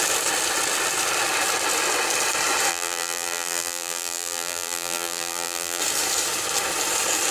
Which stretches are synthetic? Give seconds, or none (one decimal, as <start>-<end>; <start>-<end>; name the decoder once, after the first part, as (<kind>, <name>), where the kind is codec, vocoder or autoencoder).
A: 2.7-5.8 (vocoder, BigVGAN v2)